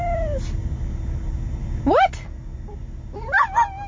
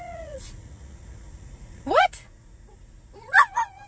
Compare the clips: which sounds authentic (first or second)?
first